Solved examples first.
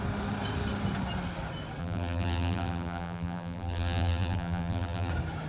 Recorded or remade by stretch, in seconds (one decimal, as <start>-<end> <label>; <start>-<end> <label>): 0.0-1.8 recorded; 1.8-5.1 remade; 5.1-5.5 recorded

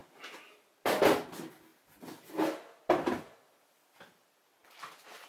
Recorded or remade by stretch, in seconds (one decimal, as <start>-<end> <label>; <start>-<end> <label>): 0.0-5.3 recorded

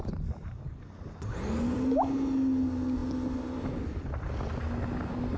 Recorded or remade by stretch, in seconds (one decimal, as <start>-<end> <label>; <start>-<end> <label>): 0.0-5.4 recorded

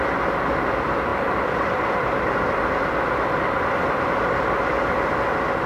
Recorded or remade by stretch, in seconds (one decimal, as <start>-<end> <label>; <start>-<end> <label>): 0.0-1.1 recorded; 1.1-4.5 remade; 4.5-5.7 recorded

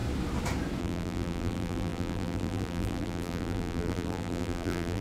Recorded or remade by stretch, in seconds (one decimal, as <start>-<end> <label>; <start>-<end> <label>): 0.0-0.8 recorded; 0.8-5.0 remade

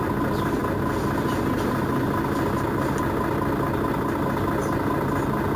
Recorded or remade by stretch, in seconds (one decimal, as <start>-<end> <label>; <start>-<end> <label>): 0.0-5.6 recorded

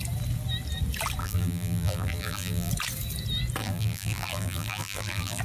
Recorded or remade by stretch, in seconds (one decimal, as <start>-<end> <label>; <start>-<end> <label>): 0.0-1.2 recorded; 1.2-2.7 remade; 2.7-3.6 recorded; 3.6-5.4 remade